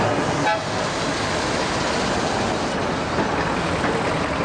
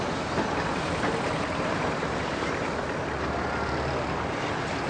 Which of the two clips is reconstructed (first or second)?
second